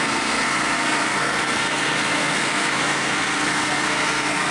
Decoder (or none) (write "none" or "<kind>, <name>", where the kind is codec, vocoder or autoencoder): codec, SNAC